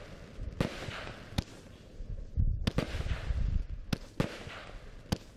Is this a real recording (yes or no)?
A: yes